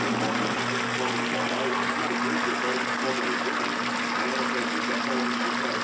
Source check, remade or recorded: recorded